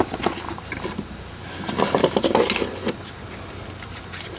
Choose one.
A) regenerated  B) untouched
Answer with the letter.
B